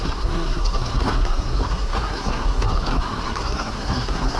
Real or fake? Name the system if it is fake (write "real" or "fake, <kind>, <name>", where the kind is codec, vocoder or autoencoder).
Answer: fake, codec, SNAC